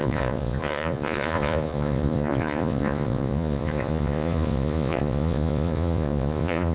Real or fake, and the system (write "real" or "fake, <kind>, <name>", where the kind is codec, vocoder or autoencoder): fake, vocoder, Vocos